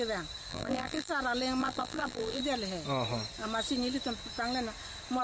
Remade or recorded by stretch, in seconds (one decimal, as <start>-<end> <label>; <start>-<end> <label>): 0.0-0.5 recorded; 0.5-1.1 remade; 1.1-1.6 recorded; 1.6-2.4 remade; 2.4-5.2 recorded